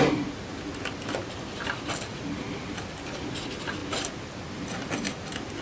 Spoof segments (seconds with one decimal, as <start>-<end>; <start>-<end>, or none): none